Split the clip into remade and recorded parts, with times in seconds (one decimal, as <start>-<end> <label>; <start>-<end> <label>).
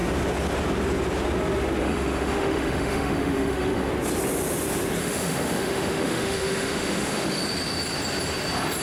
0.0-1.8 recorded; 1.8-3.9 remade; 3.9-5.0 recorded; 5.0-7.4 remade; 7.4-8.8 recorded